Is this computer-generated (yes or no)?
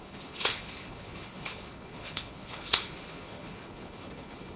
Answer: yes